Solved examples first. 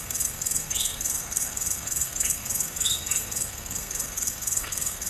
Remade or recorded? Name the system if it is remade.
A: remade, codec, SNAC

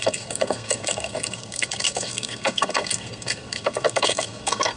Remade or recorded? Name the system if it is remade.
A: remade, codec, SNAC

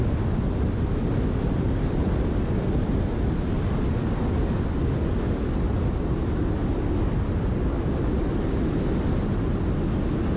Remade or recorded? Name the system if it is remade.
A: recorded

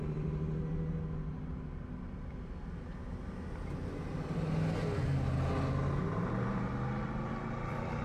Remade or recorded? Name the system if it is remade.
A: recorded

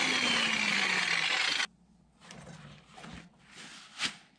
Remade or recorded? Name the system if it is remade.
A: recorded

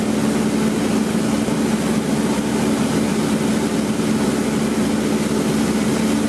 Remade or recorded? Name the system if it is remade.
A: recorded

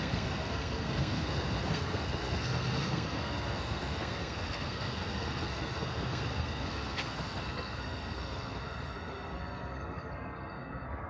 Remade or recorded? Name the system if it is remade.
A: remade, codec, SNAC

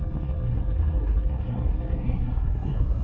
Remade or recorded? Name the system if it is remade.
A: remade, codec, SNAC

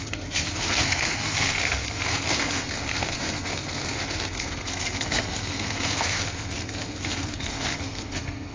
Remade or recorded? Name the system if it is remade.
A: remade, codec, SNAC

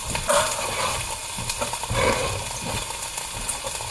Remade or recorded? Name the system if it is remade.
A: recorded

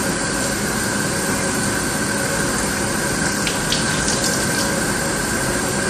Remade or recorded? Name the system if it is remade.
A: recorded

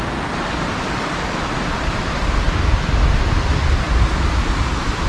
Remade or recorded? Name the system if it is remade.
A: recorded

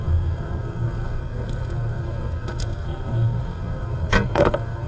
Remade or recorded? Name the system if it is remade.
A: remade, codec, SNAC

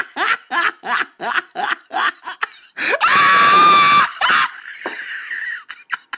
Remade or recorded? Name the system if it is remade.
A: recorded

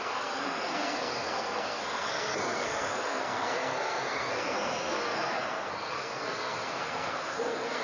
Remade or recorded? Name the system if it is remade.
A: remade, codec, SNAC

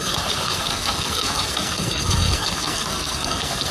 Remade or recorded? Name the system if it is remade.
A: remade, codec, SNAC